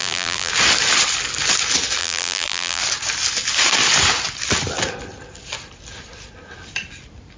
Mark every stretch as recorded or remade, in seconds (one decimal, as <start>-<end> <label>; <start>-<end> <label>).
0.0-0.5 remade; 0.5-2.0 recorded; 2.0-2.8 remade; 2.8-7.4 recorded